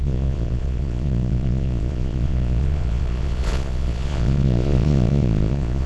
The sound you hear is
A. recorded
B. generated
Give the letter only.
B